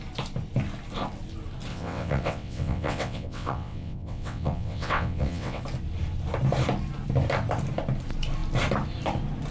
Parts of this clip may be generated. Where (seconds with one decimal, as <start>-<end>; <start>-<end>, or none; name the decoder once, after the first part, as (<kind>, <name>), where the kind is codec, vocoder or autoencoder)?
1.7-5.6 (vocoder, WaveNeXt)